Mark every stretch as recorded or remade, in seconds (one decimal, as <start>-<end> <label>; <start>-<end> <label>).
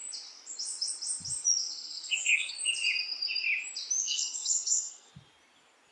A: 0.0-1.6 recorded; 1.6-2.5 remade; 2.5-4.0 recorded; 4.0-5.1 remade; 5.1-5.9 recorded